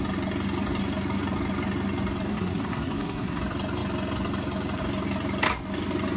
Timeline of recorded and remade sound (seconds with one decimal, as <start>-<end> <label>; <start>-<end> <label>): 0.0-2.3 recorded; 2.3-3.4 remade; 3.4-6.2 recorded